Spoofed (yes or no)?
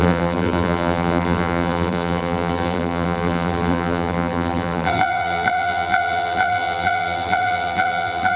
yes